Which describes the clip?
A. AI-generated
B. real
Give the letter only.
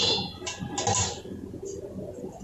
B